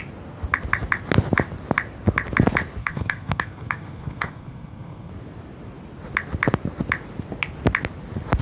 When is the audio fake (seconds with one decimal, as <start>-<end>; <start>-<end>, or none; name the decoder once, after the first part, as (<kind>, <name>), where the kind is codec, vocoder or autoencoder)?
2.8-5.1 (codec, SNAC)